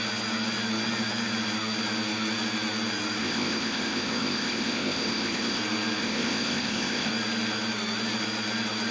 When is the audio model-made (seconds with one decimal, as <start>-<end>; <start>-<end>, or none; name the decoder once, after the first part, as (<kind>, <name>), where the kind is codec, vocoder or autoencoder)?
3.2-5.6 (codec, ZipCodec); 6.0-7.1